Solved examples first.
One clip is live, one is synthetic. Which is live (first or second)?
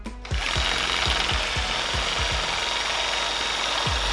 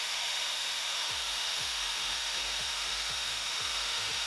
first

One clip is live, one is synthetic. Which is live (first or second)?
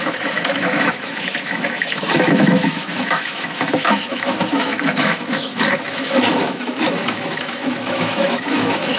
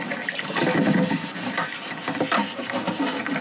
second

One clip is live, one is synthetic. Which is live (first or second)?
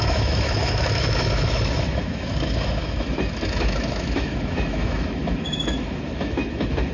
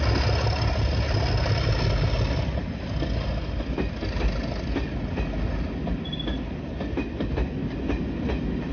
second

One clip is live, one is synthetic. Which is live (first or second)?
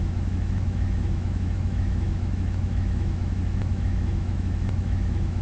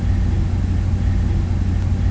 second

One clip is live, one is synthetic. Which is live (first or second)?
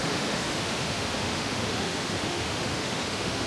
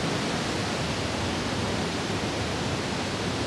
second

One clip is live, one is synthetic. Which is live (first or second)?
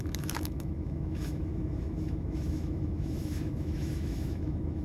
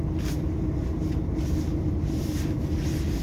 second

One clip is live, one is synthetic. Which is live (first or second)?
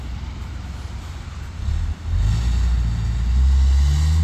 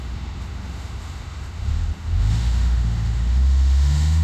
first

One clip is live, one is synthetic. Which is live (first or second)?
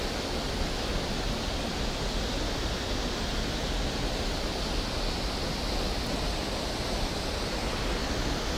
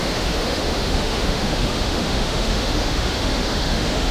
first